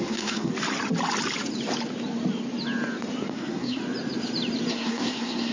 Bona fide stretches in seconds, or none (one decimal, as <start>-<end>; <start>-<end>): 0.5-3.3; 3.8-4.7